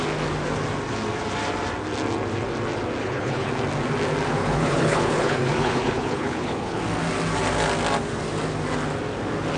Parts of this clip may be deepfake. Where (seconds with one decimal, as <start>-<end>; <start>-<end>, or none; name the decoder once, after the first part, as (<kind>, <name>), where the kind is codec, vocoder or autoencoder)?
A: 3.0-3.5 (codec, HILCodec); 4.4-6.8